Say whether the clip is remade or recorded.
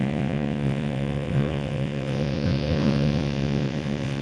remade